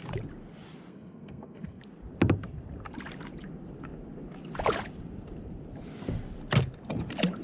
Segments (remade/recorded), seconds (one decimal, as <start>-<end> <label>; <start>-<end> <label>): 0.0-0.9 recorded; 0.9-1.8 remade; 1.8-7.4 recorded